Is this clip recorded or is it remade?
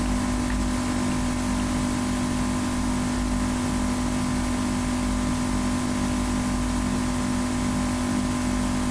recorded